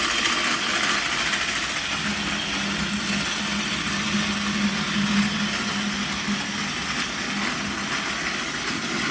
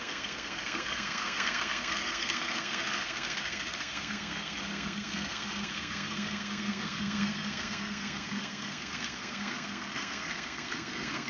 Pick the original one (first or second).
first